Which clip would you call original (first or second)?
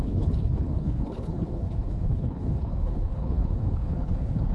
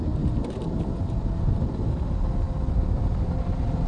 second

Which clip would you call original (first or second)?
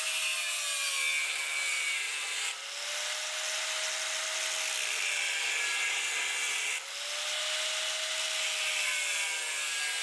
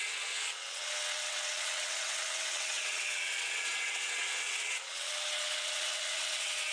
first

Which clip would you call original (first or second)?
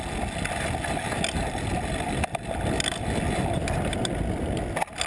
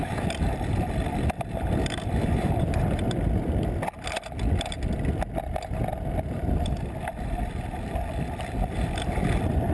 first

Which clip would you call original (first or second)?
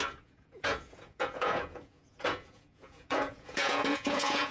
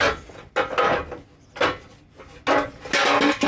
second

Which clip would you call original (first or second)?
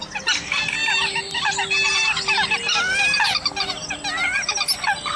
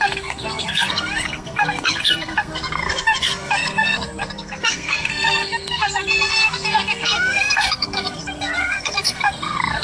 first